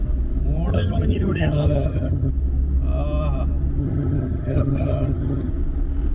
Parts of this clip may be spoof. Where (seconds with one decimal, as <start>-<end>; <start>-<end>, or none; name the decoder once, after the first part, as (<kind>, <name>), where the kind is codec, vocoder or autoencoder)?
0.7-2.3 (vocoder, HiFi-GAN); 3.8-5.5